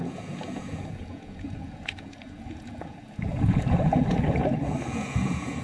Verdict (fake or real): fake